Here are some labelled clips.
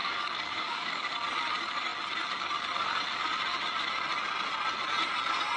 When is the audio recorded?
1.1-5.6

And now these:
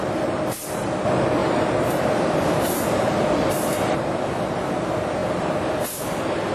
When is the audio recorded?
0.0-1.4; 3.2-6.5

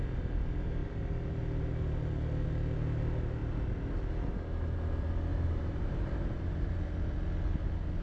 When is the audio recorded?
0.0-5.3; 6.7-8.0

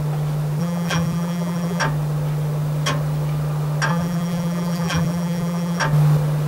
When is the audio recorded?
0.0-0.6; 1.8-3.9; 5.8-6.5

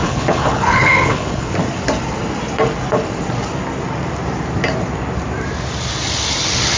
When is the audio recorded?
1.5-6.8

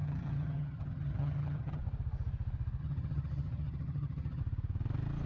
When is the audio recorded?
1.8-2.8; 4.4-5.3

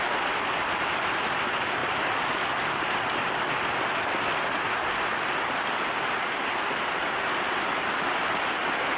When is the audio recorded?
0.0-9.0

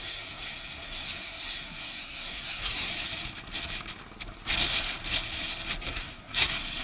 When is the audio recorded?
2.9-5.8